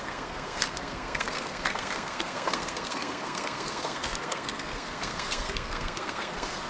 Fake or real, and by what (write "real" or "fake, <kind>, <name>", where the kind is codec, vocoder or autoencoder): fake, codec, SNAC